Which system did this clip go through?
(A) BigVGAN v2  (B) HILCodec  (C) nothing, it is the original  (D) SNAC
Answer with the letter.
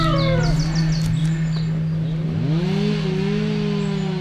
C